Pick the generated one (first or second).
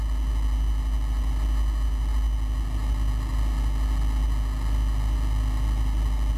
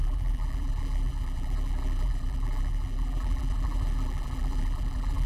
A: second